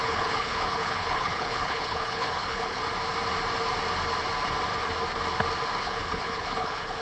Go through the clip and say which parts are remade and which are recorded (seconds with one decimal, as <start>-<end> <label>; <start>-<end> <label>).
0.0-2.8 remade; 2.8-5.8 recorded; 5.8-7.0 remade